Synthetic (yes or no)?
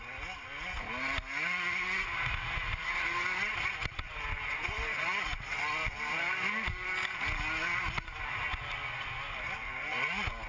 no